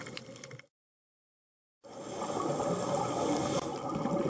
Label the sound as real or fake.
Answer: real